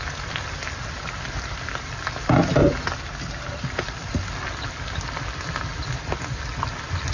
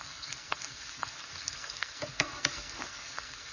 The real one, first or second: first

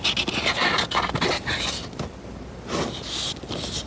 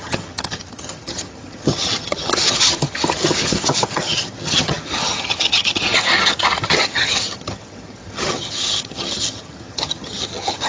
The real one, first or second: first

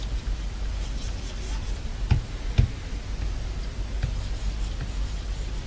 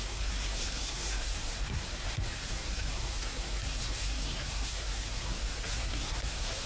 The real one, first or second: first